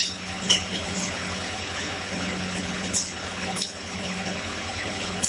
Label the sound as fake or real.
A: fake